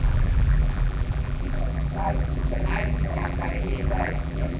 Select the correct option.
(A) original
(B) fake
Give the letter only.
B